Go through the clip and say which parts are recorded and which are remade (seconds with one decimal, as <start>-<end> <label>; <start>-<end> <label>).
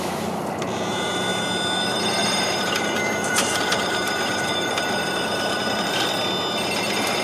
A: 0.0-2.2 recorded; 2.2-6.0 remade; 6.0-7.2 recorded